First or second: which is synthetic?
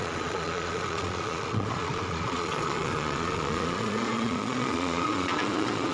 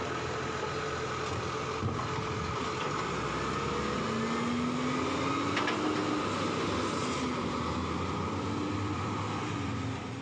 first